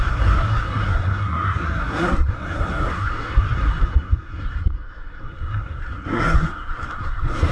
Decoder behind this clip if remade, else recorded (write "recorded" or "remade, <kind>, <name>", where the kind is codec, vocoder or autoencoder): remade, codec, SNAC